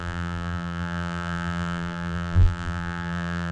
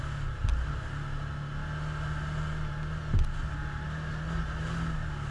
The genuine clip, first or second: second